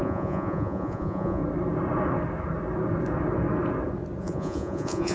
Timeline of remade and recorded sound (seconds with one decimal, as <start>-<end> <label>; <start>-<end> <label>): 0.0-1.4 remade; 1.4-4.2 recorded; 4.2-5.1 remade